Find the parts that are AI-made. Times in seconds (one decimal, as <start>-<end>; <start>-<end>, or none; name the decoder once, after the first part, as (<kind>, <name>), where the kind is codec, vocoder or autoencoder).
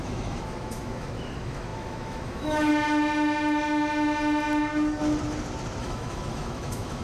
0.0-2.7 (autoencoder, DAC-VAE); 5.8-7.0